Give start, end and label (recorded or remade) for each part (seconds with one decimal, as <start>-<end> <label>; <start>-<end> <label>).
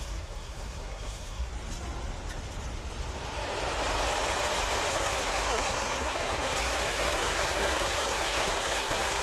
0.0-1.5 remade; 1.5-4.9 recorded; 4.9-9.2 remade